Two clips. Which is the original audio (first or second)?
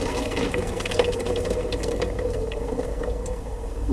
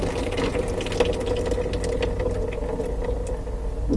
second